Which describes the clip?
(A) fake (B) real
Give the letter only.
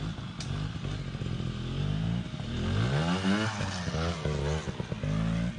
B